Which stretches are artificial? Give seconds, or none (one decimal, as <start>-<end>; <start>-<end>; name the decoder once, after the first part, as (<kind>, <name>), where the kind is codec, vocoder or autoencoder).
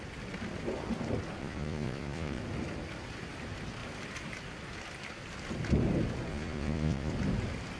1.4-2.4 (vocoder, Vocos); 6.3-7.1